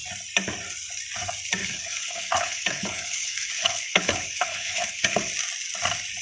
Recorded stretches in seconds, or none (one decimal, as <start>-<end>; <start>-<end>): 0.0-1.6; 5.3-6.2

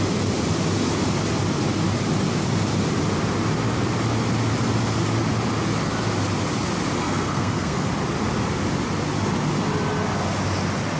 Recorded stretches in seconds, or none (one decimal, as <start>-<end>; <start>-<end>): 0.0-7.0; 7.9-11.0

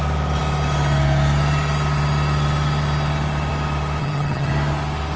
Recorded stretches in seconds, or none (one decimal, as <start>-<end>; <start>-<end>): 0.0-4.0; 4.5-5.2

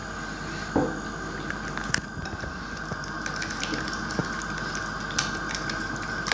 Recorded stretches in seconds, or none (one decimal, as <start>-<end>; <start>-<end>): 0.0-6.3